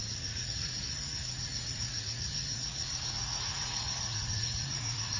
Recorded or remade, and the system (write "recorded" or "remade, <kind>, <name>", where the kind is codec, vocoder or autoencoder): remade, vocoder, Vocos